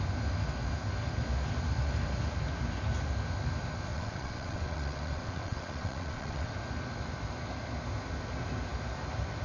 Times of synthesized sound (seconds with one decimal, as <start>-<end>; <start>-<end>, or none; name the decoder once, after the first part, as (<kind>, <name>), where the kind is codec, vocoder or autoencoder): 3.9-6.5 (vocoder, WaveNeXt)